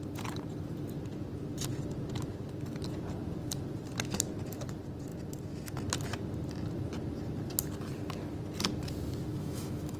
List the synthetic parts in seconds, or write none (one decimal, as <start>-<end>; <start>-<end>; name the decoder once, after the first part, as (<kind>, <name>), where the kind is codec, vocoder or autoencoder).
9.3-10.0 (autoencoder, DAC-VAE)